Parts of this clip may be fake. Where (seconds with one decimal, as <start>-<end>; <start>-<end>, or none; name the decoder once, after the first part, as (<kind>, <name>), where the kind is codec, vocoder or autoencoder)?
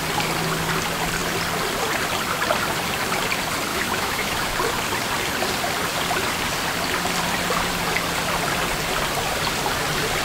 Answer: 3.7-4.5 (autoencoder, DAC-VAE)